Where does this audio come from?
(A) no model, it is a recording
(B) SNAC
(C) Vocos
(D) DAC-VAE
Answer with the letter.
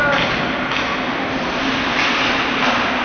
A